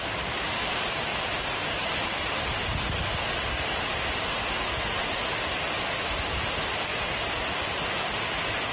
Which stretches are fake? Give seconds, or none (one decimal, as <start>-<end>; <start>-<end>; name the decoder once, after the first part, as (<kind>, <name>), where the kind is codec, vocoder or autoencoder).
6.9-7.7 (vocoder, BigVGAN v2)